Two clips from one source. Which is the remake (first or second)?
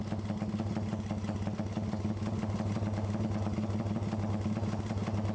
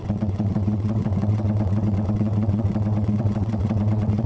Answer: second